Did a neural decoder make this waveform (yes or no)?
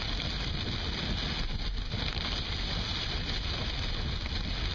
no